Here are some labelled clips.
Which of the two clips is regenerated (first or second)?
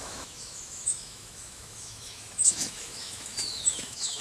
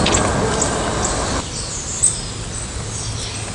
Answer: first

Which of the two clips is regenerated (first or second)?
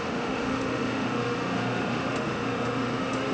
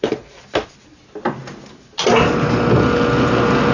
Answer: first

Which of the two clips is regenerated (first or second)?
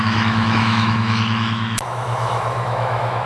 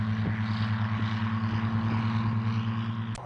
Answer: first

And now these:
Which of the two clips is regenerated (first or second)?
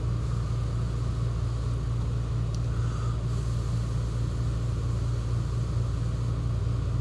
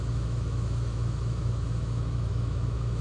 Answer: second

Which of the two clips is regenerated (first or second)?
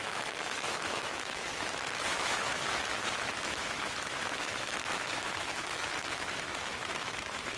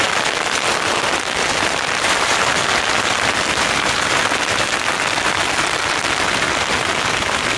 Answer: first